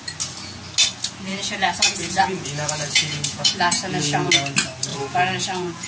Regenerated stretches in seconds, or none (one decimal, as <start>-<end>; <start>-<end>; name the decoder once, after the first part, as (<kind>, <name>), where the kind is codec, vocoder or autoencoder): 1.3-4.3 (vocoder, Vocos); 4.9-5.9